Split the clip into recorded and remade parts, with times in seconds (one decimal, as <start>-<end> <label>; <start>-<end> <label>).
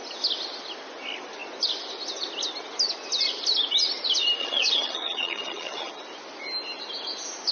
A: 0.0-4.4 recorded; 4.4-5.9 remade; 5.9-7.5 recorded